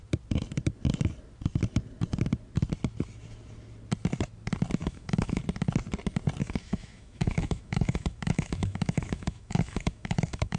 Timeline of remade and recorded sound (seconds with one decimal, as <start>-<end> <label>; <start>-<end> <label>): 0.0-4.8 recorded; 4.8-5.4 remade; 5.4-6.4 recorded; 6.4-10.6 remade